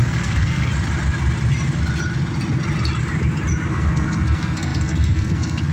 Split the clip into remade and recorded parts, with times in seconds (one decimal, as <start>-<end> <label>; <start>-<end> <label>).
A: 0.0-0.7 remade; 0.7-3.7 recorded; 3.7-5.7 remade